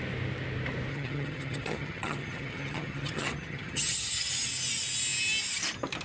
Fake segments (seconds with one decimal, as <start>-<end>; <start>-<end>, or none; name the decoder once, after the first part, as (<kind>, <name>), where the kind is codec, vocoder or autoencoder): 0.9-4.3 (vocoder, HiFi-GAN)